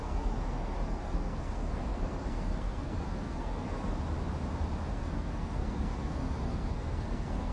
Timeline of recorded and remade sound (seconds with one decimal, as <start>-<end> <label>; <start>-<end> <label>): 0.0-3.9 remade; 3.9-4.9 recorded; 4.9-7.5 remade